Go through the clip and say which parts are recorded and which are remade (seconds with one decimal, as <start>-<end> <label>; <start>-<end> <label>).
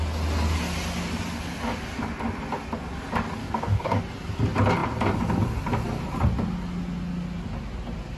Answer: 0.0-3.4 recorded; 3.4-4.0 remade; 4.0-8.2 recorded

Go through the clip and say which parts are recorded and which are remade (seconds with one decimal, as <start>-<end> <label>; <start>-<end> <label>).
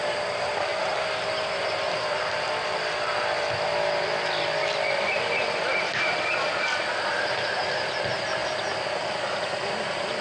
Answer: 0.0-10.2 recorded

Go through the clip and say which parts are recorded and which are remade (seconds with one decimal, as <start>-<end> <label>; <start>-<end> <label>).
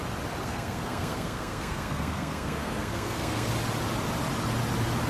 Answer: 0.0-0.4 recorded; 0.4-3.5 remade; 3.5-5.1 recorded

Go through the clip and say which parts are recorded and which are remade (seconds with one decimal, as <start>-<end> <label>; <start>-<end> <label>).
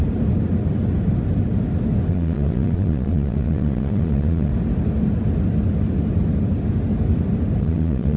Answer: 0.0-2.1 recorded; 2.1-4.5 remade; 4.5-7.6 recorded; 7.6-8.2 remade